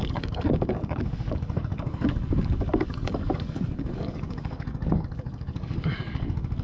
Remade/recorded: remade